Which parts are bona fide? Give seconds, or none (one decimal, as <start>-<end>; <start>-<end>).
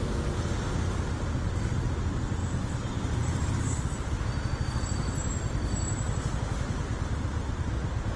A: 0.0-8.2